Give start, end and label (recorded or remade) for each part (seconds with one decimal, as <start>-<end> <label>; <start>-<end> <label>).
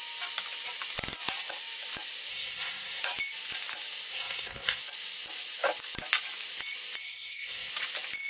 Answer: 0.0-2.3 recorded; 2.3-3.0 remade; 3.0-4.1 recorded; 4.1-4.8 remade; 4.8-7.0 recorded; 7.0-7.7 remade; 7.7-8.3 recorded